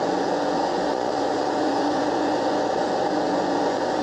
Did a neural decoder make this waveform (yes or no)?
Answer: yes